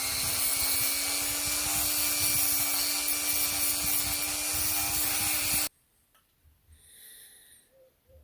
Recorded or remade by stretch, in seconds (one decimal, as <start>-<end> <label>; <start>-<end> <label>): 0.0-0.5 remade; 0.5-4.9 recorded; 4.9-8.2 remade